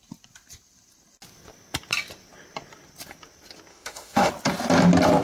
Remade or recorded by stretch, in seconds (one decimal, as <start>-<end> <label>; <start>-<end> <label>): 0.0-3.7 recorded; 3.7-4.3 remade; 4.3-5.2 recorded